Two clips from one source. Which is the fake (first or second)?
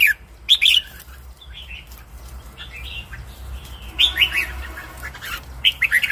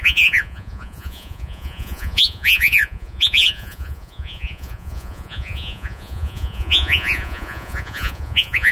second